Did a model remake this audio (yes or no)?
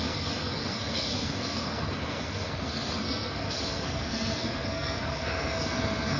yes